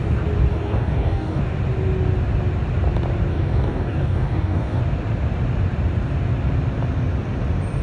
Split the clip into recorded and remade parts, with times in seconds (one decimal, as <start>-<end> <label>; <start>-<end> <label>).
0.0-0.5 recorded; 0.5-1.4 remade; 1.4-3.3 recorded; 3.3-4.8 remade; 4.8-7.8 recorded